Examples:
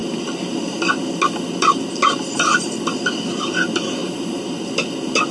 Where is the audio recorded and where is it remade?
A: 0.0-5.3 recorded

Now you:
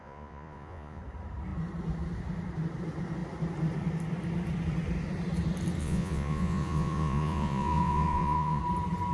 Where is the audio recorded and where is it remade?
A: 0.0-1.0 remade; 1.0-5.8 recorded; 5.8-8.6 remade; 8.6-9.1 recorded

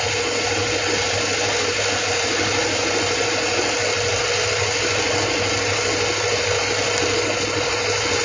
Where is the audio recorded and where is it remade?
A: 0.0-8.2 recorded

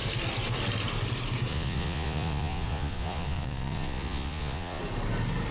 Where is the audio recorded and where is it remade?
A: 0.0-1.5 recorded; 1.5-4.8 remade; 4.8-5.5 recorded

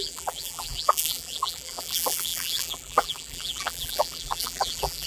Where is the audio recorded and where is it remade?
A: 0.0-5.1 remade

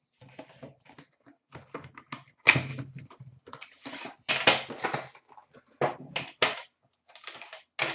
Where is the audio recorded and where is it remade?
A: 0.0-2.7 recorded; 2.7-4.3 remade; 4.3-7.9 recorded

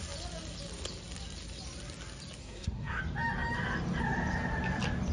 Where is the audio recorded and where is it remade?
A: 0.0-2.4 recorded; 2.4-3.0 remade; 3.0-5.1 recorded

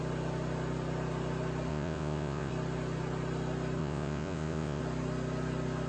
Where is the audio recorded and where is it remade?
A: 0.0-1.7 recorded; 1.7-2.5 remade; 2.5-3.8 recorded; 3.8-4.8 remade; 4.8-5.9 recorded